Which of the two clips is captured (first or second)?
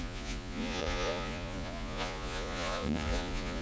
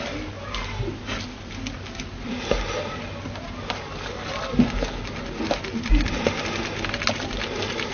second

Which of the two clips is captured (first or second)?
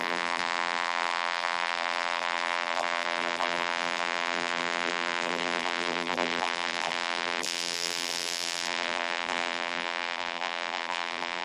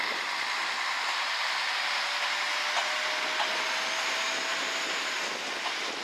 second